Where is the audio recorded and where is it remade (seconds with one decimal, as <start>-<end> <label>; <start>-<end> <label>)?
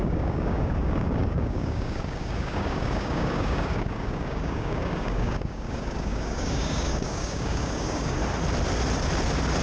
0.0-8.2 remade; 8.2-9.6 recorded